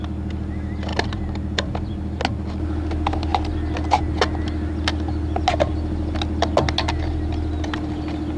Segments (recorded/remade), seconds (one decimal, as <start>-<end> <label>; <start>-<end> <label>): 0.0-0.9 recorded; 0.9-2.2 remade; 2.2-8.4 recorded